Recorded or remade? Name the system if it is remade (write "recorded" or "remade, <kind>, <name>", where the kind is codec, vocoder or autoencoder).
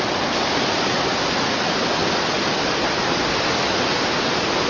recorded